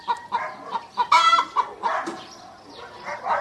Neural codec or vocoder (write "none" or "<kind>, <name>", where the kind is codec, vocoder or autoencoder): none